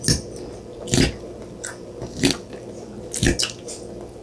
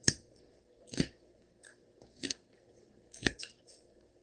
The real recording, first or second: first